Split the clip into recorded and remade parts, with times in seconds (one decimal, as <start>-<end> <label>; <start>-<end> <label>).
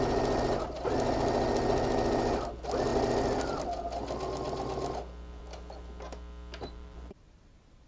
0.0-6.6 recorded; 6.6-7.9 remade